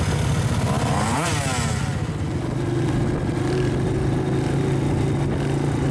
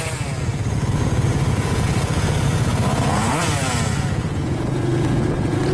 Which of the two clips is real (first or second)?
first